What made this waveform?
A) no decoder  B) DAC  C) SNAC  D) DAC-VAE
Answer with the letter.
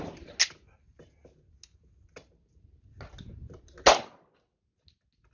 A